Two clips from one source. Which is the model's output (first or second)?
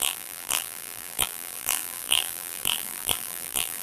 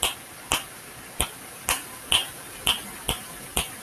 first